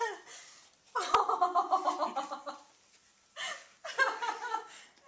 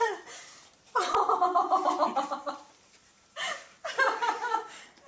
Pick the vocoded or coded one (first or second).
second